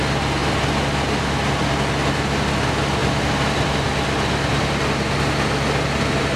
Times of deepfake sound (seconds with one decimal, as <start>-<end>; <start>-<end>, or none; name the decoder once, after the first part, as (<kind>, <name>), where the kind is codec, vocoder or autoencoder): 3.0-3.7 (vocoder, BigVGAN v2)